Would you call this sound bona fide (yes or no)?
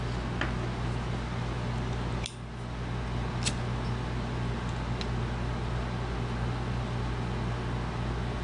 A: yes